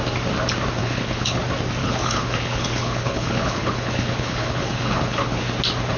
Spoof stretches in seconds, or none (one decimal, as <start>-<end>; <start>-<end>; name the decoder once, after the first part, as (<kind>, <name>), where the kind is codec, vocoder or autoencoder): 0.8-1.4 (codec, HILCodec); 1.8-5.4